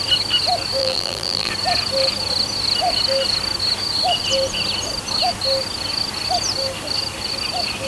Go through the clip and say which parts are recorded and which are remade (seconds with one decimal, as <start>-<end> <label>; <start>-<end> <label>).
0.0-0.8 recorded; 0.8-1.5 remade; 1.5-7.9 recorded